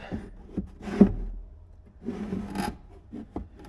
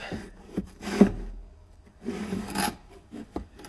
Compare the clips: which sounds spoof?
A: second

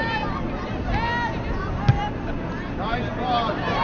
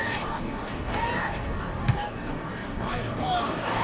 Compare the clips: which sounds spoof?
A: second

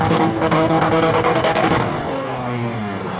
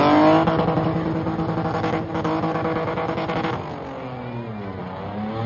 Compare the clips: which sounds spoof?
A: first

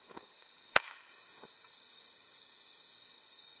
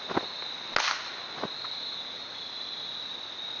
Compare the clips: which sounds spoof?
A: first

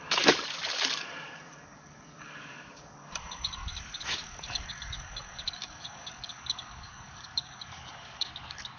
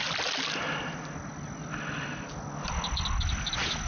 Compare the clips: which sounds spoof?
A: first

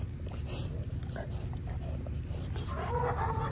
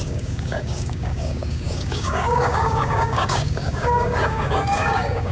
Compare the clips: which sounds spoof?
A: second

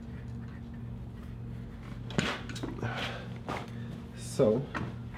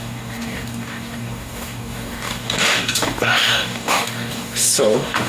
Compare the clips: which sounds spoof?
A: second